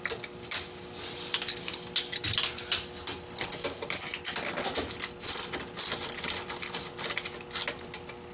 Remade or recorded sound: recorded